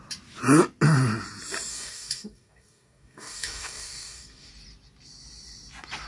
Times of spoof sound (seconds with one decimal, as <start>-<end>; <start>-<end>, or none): 1.7-4.5